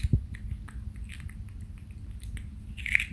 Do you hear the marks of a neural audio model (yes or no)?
no